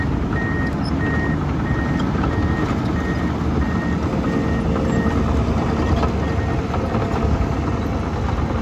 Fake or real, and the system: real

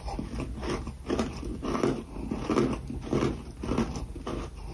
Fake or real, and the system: real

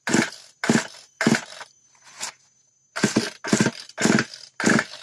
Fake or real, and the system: real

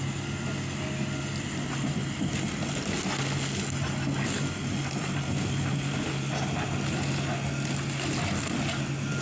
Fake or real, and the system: real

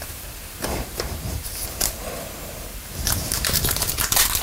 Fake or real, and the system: fake, vocoder, BigVGAN v2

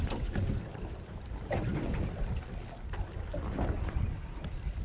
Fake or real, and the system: real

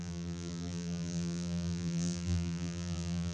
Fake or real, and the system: fake, vocoder, BigVGAN v2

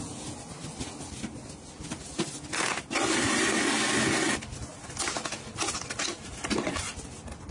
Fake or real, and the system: real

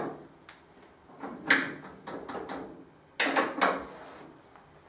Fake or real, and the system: real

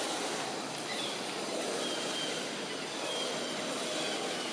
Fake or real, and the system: real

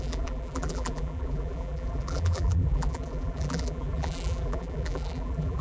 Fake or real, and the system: fake, vocoder, BigVGAN v2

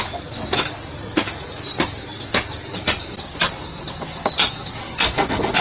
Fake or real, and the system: real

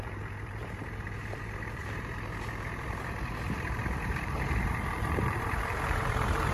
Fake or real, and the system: fake, vocoder, BigVGAN v2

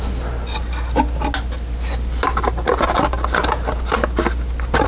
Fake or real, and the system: real